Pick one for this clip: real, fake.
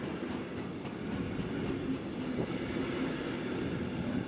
real